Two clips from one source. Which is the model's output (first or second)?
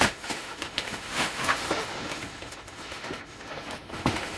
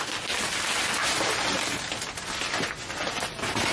first